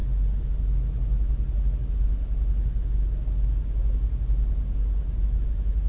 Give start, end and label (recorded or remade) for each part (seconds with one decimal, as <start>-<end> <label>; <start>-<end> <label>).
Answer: 0.0-5.9 recorded